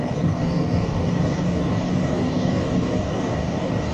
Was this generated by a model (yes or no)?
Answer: yes